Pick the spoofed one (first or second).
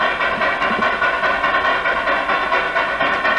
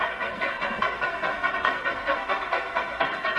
second